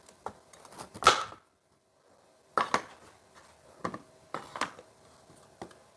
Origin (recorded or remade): recorded